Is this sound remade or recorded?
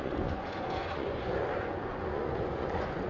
remade